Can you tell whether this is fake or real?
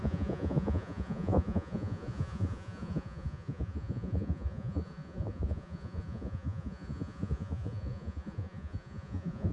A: fake